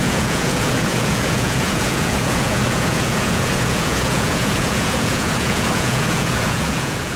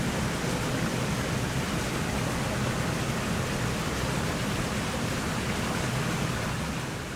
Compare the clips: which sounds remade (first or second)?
first